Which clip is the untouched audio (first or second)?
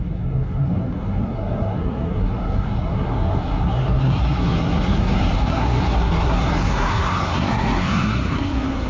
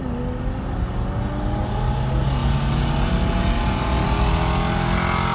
second